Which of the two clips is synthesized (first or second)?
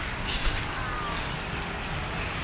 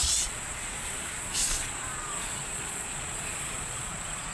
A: second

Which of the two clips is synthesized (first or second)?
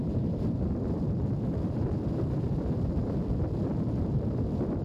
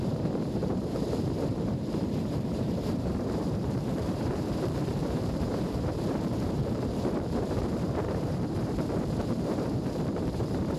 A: second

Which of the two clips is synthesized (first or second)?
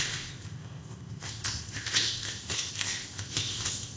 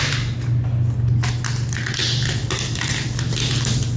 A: first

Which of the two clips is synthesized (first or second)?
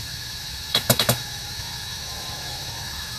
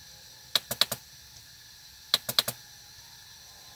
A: first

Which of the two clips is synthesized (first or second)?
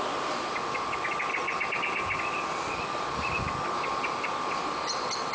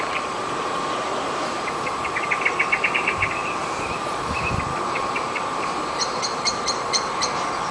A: second